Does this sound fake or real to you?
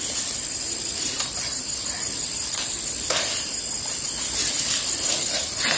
real